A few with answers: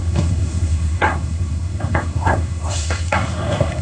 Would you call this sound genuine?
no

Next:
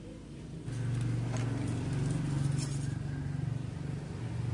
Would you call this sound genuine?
yes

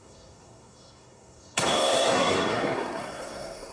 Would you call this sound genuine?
no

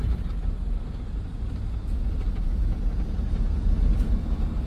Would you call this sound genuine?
yes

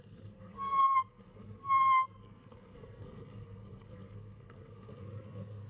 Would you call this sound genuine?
no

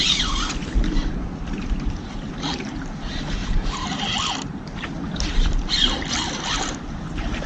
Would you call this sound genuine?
yes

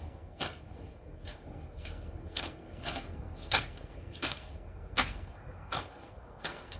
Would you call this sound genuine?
no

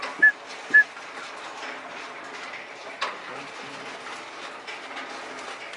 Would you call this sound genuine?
yes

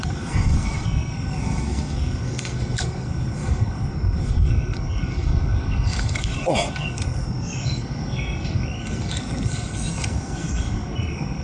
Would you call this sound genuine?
no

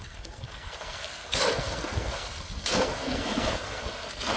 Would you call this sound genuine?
no